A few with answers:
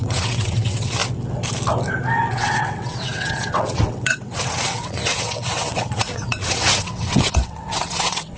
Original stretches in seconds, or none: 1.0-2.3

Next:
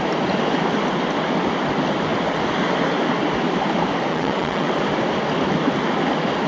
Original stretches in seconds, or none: 0.0-4.1; 4.7-6.5

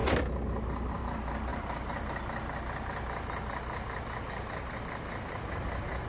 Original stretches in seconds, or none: 0.0-6.1

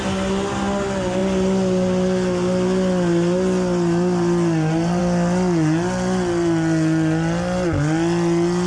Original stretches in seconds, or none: 0.0-8.7